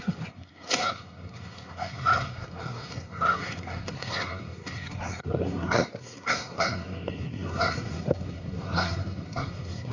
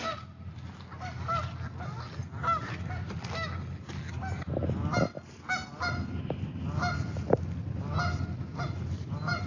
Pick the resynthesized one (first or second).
first